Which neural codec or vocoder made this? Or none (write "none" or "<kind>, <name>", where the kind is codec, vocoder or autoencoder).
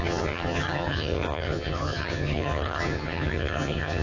vocoder, HiFi-GAN